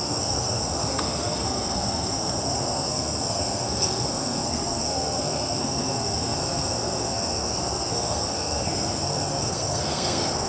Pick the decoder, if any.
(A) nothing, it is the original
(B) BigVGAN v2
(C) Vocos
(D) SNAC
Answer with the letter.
D